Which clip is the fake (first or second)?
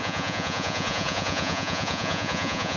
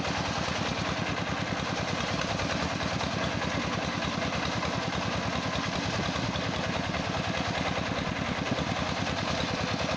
first